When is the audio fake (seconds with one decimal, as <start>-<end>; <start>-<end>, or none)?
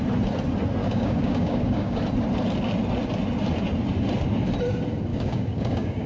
0.8-2.0; 5.1-6.1